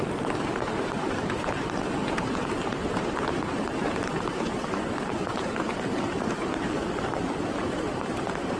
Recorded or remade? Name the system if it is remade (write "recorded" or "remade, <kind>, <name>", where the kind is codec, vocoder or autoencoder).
remade, vocoder, BigVGAN v2